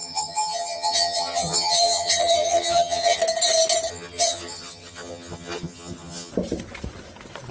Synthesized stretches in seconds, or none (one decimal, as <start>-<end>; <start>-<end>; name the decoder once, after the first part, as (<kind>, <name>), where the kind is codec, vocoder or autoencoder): 0.0-3.2 (vocoder, HiFi-GAN); 3.9-6.3